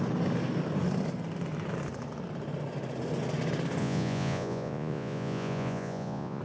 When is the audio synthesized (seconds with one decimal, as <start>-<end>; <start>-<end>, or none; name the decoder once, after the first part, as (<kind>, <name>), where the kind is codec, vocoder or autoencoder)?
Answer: 3.8-6.4 (vocoder, Vocos)